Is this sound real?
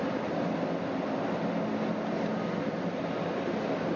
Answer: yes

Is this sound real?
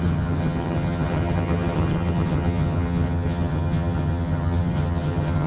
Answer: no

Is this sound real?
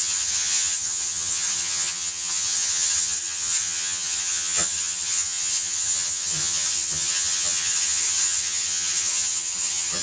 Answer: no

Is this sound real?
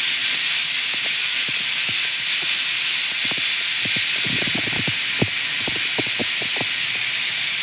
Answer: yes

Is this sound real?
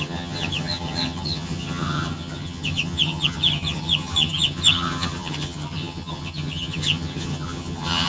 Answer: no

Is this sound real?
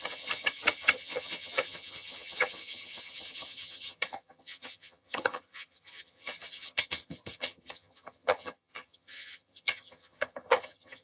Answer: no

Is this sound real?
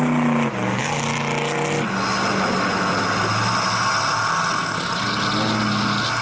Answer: yes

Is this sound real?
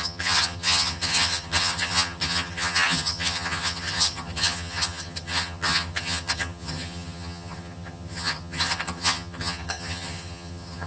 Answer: no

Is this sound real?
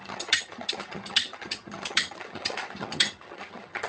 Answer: no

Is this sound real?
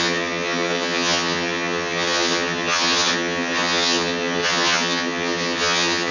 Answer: no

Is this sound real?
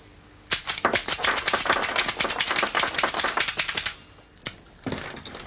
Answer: yes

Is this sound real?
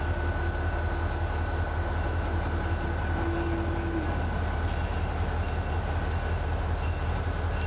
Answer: yes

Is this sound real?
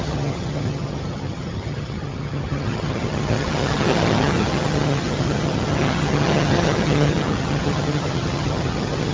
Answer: no